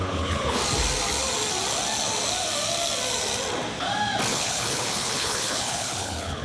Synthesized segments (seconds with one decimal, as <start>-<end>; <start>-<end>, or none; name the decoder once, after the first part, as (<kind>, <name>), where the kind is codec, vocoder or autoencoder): 0.0-0.6 (codec, HILCodec); 4.3-6.4